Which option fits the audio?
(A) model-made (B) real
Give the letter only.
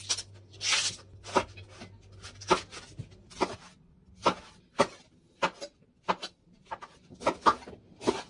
B